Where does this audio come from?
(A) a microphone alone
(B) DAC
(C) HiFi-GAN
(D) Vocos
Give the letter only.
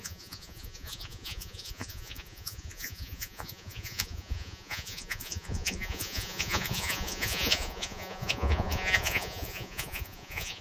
D